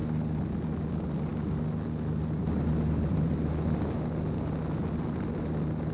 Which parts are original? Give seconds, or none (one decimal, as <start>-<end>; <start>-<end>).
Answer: 0.0-5.9